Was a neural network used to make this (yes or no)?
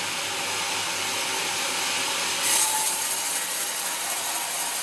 no